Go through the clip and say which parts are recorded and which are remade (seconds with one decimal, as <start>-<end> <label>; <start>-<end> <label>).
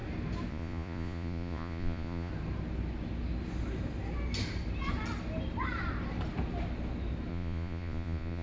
0.0-0.5 recorded; 0.5-2.3 remade; 2.3-7.3 recorded; 7.3-8.4 remade